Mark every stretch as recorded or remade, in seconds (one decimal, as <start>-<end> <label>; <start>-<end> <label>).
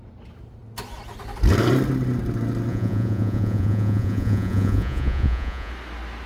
0.0-2.7 recorded; 2.7-5.7 remade; 5.7-6.3 recorded